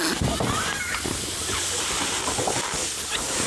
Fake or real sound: real